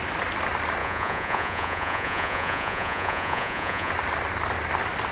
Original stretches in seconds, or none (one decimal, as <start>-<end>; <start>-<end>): 0.0-0.8; 3.9-5.1